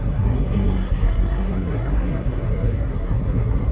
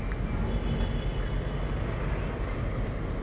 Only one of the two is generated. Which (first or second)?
first